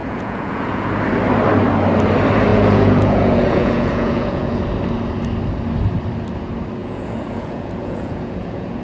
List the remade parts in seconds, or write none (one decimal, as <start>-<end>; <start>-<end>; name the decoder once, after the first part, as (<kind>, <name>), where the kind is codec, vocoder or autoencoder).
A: 0.0-0.9 (vocoder, Vocos); 2.5-4.6; 6.8-8.8